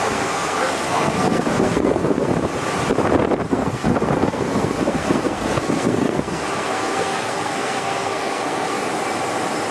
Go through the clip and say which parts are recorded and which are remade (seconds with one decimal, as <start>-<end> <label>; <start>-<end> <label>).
0.0-2.3 remade; 2.3-3.5 recorded; 3.5-8.8 remade; 8.8-9.7 recorded